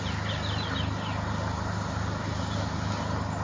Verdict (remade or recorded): recorded